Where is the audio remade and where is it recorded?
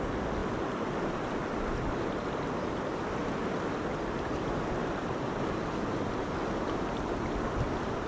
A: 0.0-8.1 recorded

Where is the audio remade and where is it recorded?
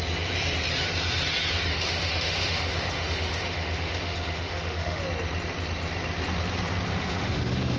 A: 0.0-1.7 recorded; 1.7-5.0 remade; 5.0-6.9 recorded; 6.9-7.8 remade